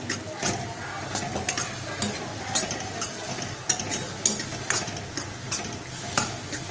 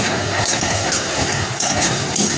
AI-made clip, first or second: second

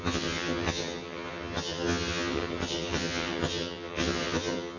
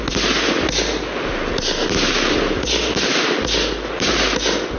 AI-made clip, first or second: first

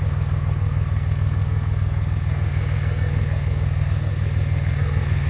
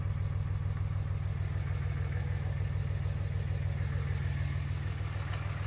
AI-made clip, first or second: first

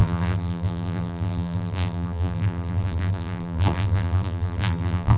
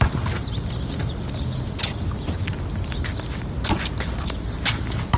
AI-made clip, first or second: first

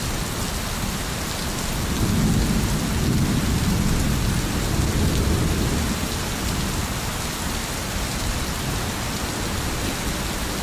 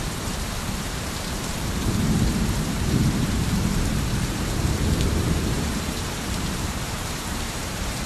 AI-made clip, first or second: second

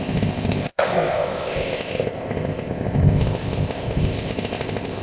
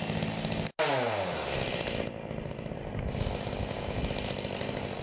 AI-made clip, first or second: first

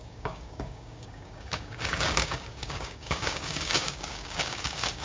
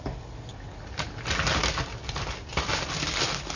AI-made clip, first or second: first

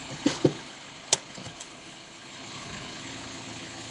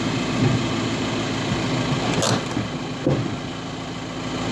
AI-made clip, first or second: first